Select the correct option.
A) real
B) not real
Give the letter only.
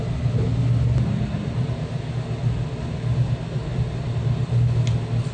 A